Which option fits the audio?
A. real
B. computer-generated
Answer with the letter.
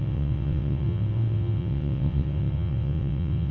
B